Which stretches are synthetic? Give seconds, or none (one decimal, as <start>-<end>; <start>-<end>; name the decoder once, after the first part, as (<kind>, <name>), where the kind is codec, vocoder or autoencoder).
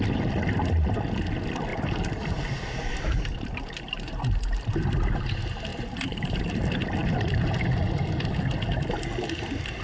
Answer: 1.7-4.2 (vocoder, BigVGAN v2); 5.7-6.6